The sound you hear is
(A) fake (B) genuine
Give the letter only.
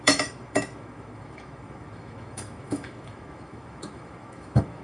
A